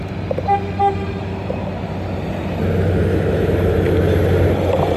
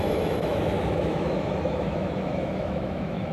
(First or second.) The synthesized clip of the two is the second